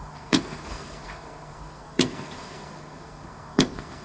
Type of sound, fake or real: fake